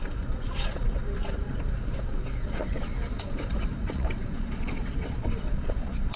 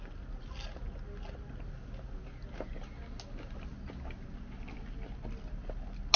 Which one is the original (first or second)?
second